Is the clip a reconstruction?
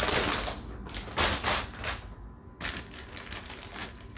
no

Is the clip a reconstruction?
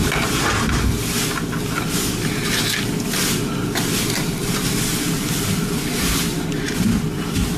no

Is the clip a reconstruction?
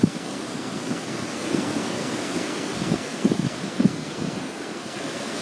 yes